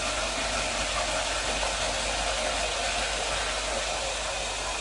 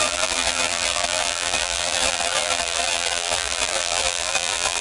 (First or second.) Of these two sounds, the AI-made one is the second